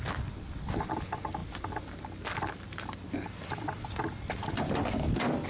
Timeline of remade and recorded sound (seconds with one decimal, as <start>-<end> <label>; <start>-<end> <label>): 0.0-5.5 recorded